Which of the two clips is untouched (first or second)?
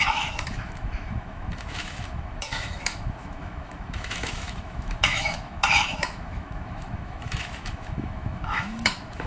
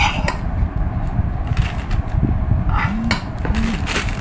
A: second